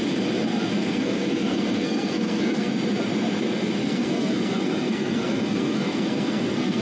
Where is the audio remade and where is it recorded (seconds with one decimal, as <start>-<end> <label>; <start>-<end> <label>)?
0.0-0.8 recorded; 0.8-2.7 remade; 2.7-3.8 recorded; 3.8-6.8 remade